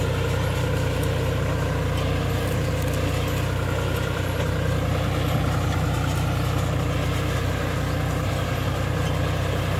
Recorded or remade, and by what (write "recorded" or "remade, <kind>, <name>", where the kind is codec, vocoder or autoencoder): recorded